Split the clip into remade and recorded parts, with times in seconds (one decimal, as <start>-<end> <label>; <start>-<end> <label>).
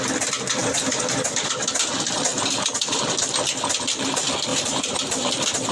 0.0-0.6 recorded; 0.6-1.2 remade; 1.2-4.5 recorded; 4.5-5.3 remade; 5.3-5.7 recorded